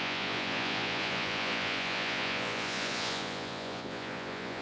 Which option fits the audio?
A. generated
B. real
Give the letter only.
A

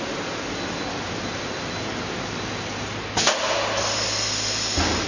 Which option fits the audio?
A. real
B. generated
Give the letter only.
A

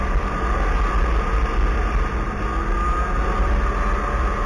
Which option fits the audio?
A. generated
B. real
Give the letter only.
B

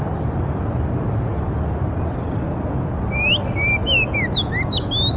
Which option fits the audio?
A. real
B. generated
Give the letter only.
A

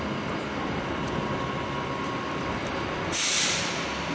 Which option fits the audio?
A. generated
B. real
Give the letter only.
B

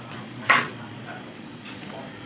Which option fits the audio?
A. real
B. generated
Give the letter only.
B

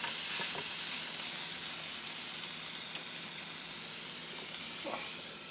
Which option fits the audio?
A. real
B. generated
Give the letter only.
A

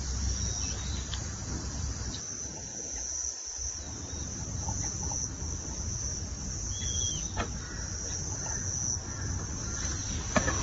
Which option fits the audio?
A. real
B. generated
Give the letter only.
A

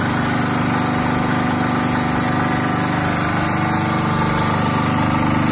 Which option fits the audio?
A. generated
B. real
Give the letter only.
B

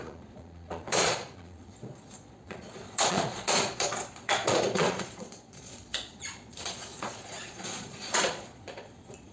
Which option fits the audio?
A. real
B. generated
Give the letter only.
B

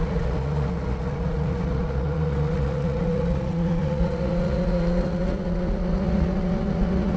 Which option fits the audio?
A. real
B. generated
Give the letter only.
B